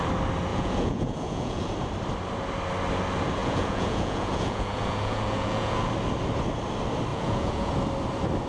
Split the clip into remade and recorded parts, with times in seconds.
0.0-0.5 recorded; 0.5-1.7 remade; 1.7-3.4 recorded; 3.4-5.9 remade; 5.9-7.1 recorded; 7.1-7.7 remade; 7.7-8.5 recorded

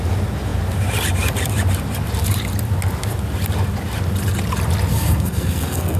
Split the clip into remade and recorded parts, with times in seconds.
0.0-4.9 recorded; 4.9-6.0 remade

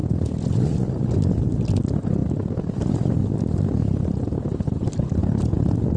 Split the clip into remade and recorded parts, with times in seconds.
0.0-2.2 recorded; 2.2-2.7 remade; 2.7-6.0 recorded

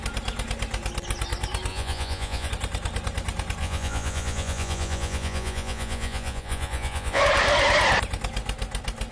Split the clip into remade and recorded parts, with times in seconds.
0.0-1.7 recorded; 1.7-2.5 remade; 2.5-3.6 recorded; 3.6-7.2 remade; 7.2-9.1 recorded